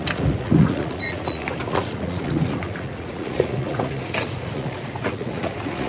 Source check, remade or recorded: remade